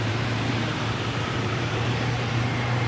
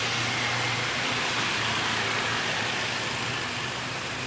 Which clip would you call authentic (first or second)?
second